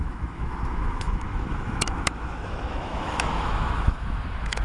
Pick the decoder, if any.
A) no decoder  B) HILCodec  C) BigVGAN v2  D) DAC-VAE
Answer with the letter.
D